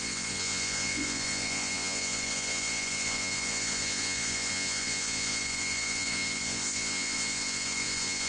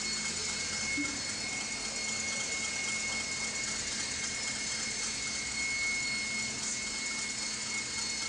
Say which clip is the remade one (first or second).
first